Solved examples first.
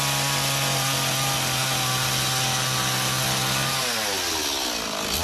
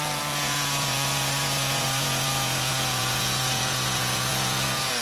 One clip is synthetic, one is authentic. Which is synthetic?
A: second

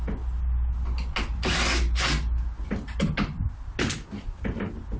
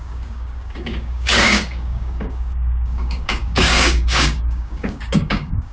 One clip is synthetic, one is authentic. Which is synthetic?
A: second